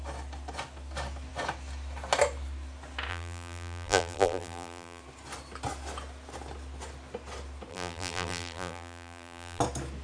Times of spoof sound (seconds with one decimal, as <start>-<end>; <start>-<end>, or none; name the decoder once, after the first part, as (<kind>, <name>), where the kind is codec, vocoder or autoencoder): 3.1-5.0 (vocoder, BigVGAN v2); 7.7-9.6